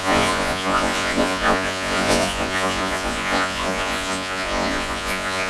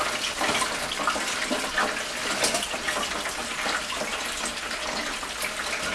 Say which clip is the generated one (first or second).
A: first